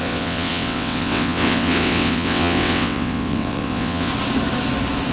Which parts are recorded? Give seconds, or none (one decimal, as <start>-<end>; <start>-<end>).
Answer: 4.1-5.1